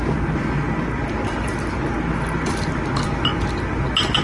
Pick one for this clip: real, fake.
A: real